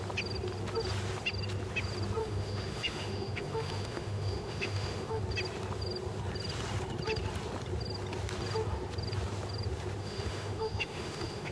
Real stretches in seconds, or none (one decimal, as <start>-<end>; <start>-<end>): 0.0-2.2; 5.2-10.0